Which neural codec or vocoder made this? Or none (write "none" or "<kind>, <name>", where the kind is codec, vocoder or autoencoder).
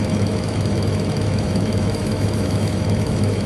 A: autoencoder, DAC-VAE